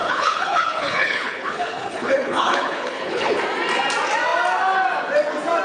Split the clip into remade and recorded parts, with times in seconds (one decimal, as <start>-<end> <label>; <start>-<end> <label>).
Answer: 0.0-3.4 remade; 3.4-5.6 recorded